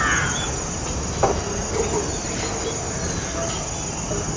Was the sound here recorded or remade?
recorded